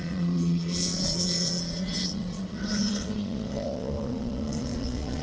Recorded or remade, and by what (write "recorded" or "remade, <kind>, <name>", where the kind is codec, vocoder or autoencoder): remade, vocoder, Vocos